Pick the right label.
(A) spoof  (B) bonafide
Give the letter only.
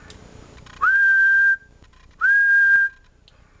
B